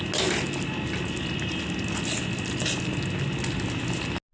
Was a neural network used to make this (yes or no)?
no